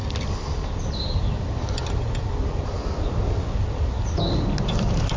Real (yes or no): yes